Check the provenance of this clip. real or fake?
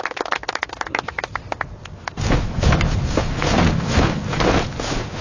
real